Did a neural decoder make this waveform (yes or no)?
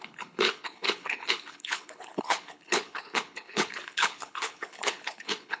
yes